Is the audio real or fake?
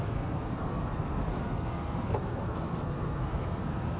fake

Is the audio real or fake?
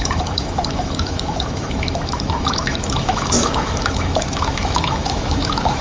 fake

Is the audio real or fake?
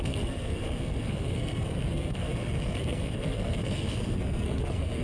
fake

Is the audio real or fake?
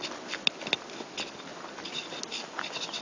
real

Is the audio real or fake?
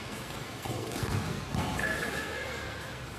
fake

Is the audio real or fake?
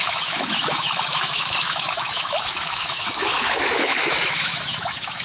fake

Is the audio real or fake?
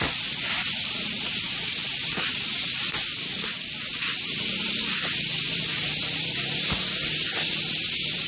real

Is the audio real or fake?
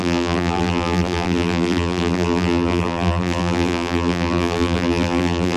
fake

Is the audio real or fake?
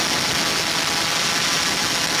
real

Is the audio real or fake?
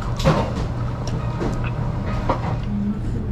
real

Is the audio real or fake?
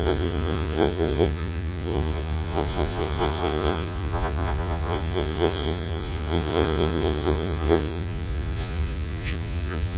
fake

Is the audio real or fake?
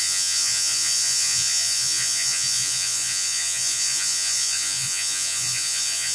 fake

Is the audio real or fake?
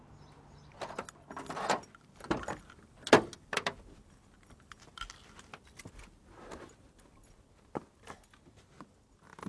real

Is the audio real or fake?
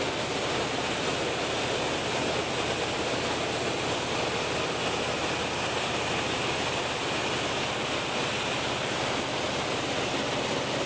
real